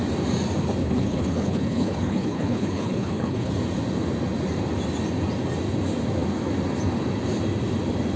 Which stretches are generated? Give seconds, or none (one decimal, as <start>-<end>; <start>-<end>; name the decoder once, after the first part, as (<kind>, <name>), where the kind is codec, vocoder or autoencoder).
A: 0.8-3.5 (codec, HILCodec)